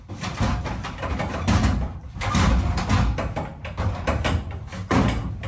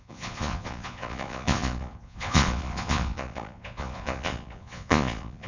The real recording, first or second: first